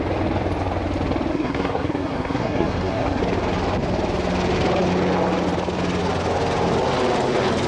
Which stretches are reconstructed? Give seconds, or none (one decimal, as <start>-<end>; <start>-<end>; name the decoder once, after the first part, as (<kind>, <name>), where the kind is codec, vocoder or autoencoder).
1.3-3.2 (codec, SNAC)